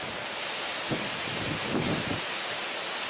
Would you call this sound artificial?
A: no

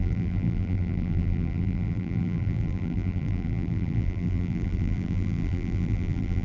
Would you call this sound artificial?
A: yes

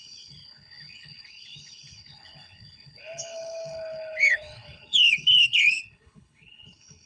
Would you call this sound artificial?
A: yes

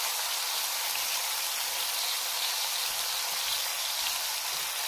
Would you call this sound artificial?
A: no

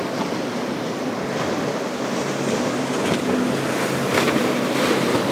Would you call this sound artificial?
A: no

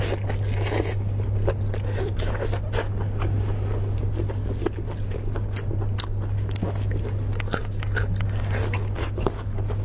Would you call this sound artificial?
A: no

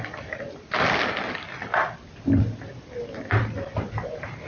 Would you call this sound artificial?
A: no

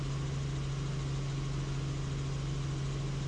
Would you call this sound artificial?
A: no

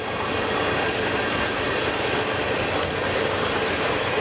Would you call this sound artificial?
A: no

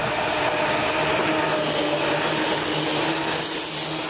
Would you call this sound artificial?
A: no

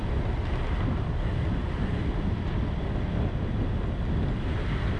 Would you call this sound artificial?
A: no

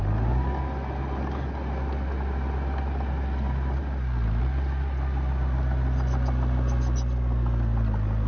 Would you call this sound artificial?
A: no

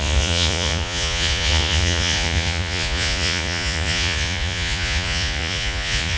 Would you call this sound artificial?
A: yes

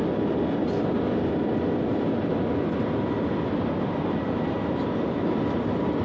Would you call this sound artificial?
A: no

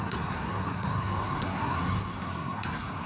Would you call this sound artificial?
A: yes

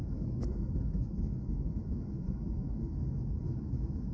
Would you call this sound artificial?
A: yes